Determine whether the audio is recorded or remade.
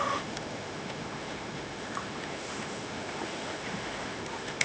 remade